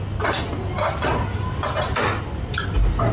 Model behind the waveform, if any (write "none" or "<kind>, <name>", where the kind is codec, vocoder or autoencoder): none